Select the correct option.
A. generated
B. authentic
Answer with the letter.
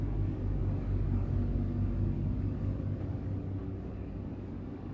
A